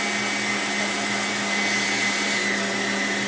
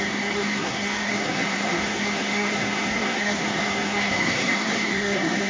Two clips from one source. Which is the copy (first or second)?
second